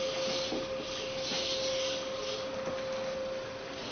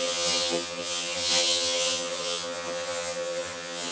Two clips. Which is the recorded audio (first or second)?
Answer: first